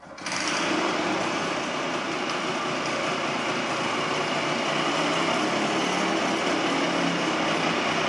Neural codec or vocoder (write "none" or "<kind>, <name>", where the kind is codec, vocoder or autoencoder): none